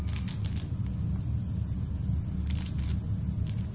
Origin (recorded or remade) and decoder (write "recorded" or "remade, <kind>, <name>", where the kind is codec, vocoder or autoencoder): recorded